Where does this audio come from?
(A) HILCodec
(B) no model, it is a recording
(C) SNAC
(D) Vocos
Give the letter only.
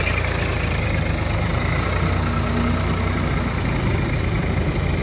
B